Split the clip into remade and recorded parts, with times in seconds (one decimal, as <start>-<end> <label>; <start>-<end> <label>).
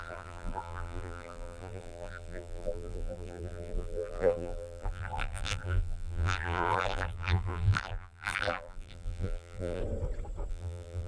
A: 0.0-9.8 remade; 9.8-10.5 recorded; 10.5-11.1 remade